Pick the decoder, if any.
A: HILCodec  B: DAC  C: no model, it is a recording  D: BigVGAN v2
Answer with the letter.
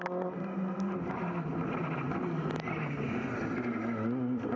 C